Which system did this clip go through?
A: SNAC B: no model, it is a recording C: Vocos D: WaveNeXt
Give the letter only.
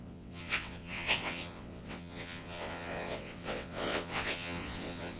D